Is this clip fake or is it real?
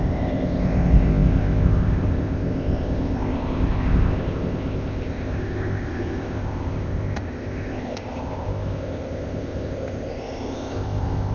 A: fake